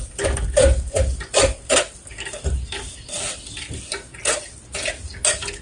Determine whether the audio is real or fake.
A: real